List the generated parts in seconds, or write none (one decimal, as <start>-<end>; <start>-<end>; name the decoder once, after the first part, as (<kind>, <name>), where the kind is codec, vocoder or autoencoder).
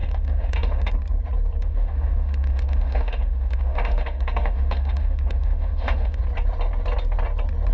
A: 0.0-0.9 (autoencoder, DAC-VAE); 1.6-6.2